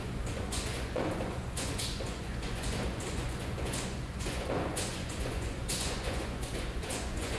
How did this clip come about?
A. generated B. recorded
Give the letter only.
A